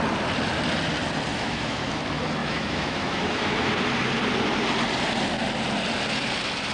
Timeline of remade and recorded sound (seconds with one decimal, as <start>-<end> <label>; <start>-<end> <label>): 0.0-1.3 recorded; 1.3-1.9 remade; 1.9-2.4 recorded; 2.4-3.7 remade; 3.7-6.7 recorded

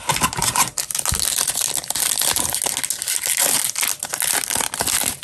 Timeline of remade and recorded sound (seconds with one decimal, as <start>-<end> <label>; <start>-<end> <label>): 0.0-5.2 recorded

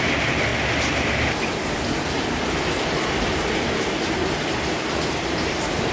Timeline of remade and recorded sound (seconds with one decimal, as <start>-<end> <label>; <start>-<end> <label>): 0.0-5.9 recorded

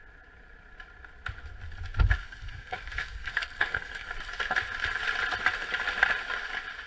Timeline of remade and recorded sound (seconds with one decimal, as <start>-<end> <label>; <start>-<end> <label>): 0.0-2.2 recorded; 2.2-4.1 remade; 4.1-6.9 recorded